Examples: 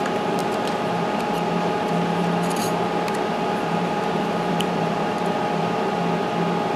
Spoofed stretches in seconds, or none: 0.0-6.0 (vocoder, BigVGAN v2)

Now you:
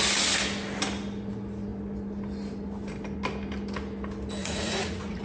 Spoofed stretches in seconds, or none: 4.4-5.2 (vocoder, Vocos)

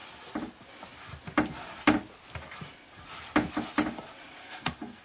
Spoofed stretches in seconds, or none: 4.4-5.0 (codec, SNAC)

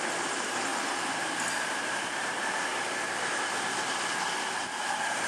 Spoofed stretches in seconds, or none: 0.0-0.7 (vocoder, BigVGAN v2); 1.7-2.7; 4.6-5.3